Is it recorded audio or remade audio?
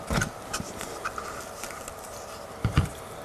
recorded